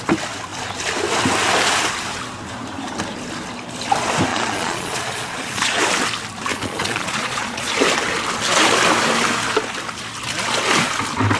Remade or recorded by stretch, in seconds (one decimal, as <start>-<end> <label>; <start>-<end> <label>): 0.0-4.3 recorded; 4.3-5.8 remade; 5.8-6.5 recorded; 6.5-7.7 remade; 7.7-11.4 recorded